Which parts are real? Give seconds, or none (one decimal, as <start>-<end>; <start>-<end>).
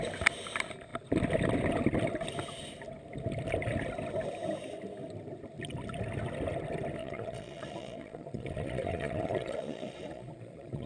0.0-7.0